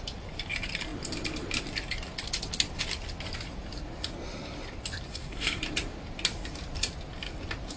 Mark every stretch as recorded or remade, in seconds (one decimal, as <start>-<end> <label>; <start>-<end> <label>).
0.0-5.1 recorded; 5.1-5.6 remade; 5.6-7.8 recorded